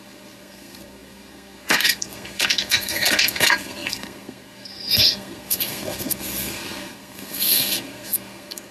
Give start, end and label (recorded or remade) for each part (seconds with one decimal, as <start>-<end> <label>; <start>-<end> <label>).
0.0-8.7 remade